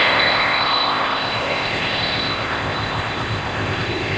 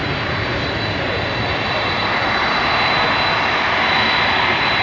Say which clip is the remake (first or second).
first